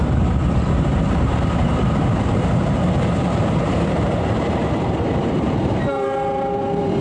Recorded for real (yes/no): no